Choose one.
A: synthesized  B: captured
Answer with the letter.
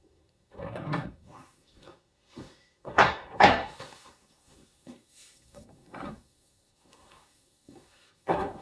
A